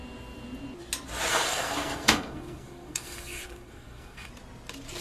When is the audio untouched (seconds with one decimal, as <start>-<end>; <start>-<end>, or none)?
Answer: 0.0-1.3; 4.3-5.0